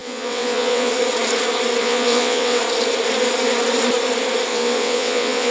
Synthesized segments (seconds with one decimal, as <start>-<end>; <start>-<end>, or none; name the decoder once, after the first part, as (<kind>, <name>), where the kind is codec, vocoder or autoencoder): 0.0-0.9 (vocoder, WaveNeXt); 1.8-2.6; 4.5-5.5